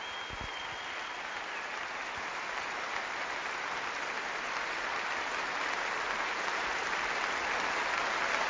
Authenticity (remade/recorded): recorded